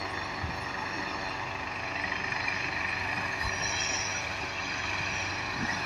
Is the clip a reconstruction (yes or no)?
no